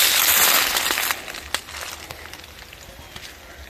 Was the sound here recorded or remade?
recorded